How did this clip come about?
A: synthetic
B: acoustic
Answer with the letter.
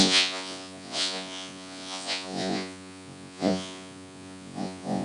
A